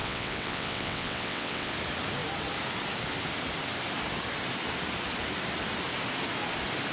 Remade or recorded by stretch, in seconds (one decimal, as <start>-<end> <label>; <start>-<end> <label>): 0.0-1.7 remade; 1.7-6.9 recorded